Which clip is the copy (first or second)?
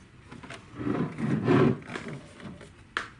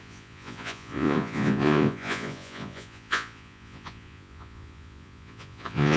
second